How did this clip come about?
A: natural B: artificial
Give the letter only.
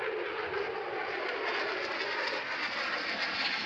A